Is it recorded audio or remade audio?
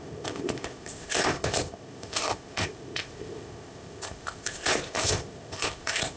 remade